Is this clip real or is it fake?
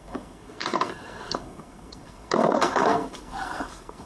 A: fake